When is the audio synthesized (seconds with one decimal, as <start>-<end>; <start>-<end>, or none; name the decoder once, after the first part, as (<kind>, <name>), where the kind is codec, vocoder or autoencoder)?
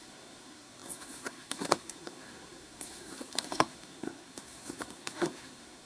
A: 0.0-5.9 (codec, SNAC)